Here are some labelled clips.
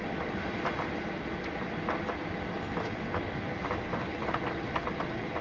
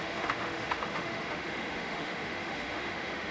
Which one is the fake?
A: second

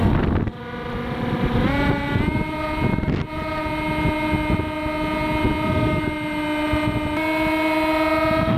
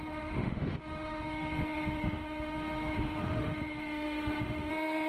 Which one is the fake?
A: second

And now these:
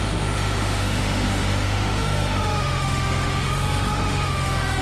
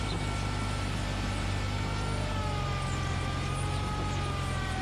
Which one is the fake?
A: first